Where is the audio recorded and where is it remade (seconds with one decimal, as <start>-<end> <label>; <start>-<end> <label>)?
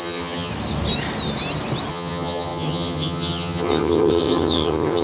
0.0-0.5 remade; 0.5-1.9 recorded; 1.9-5.0 remade